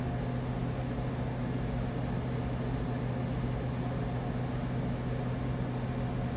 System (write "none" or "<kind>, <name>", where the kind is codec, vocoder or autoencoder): none